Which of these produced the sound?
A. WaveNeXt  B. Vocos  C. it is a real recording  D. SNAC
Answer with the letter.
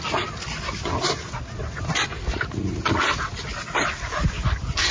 C